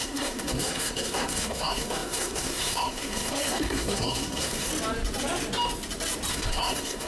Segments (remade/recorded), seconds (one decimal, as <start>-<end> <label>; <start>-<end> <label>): 0.0-4.7 remade; 4.7-6.3 recorded; 6.3-7.1 remade